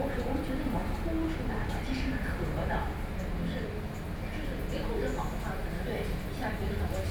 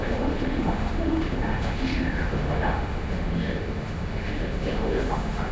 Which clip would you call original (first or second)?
first